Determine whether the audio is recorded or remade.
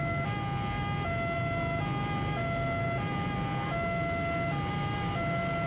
recorded